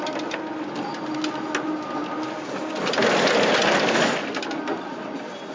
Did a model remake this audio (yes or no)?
no